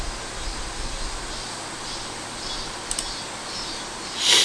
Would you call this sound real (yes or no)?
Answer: yes